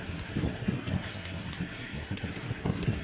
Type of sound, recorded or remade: remade